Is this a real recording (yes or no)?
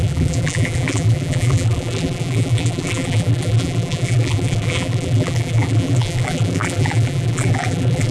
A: no